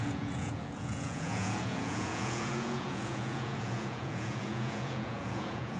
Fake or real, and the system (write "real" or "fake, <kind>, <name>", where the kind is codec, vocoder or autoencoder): fake, vocoder, Vocos